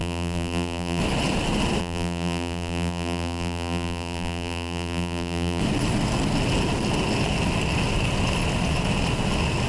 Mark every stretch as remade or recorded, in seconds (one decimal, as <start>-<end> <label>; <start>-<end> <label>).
0.0-1.0 remade; 1.0-1.8 recorded; 1.8-5.6 remade; 5.6-9.7 recorded

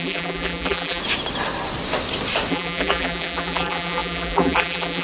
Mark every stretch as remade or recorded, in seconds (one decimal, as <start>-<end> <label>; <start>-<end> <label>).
0.0-1.0 remade; 1.0-2.5 recorded; 2.5-5.0 remade

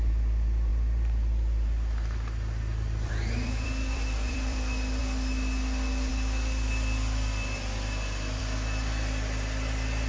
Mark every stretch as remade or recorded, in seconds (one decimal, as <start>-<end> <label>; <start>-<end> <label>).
0.0-0.7 recorded; 0.7-5.0 remade; 5.0-10.1 recorded

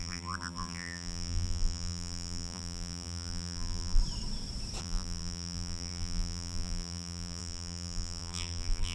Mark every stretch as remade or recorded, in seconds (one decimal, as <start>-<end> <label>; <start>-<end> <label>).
0.0-4.0 remade; 4.0-4.8 recorded; 4.8-8.9 remade

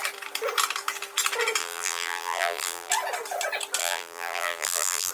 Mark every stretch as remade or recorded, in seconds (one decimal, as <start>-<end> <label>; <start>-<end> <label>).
0.0-1.6 recorded; 1.6-2.9 remade; 2.9-3.8 recorded; 3.8-5.1 remade

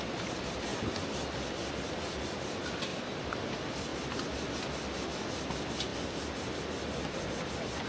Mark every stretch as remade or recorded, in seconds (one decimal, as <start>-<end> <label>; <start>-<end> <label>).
0.0-2.9 recorded; 2.9-3.5 remade; 3.5-7.9 recorded

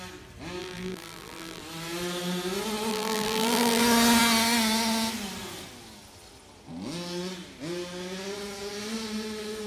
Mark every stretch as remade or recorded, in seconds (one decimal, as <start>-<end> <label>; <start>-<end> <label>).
0.0-0.6 recorded; 0.6-1.6 remade; 1.6-2.9 recorded; 2.9-3.8 remade; 3.8-9.7 recorded